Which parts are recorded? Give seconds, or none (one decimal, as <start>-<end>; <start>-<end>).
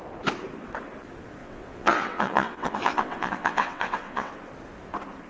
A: 0.0-1.4; 4.3-5.3